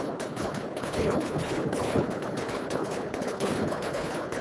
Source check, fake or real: fake